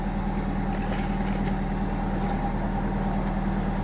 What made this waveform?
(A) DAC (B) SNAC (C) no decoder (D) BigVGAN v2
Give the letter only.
C